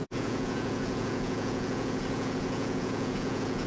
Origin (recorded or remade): remade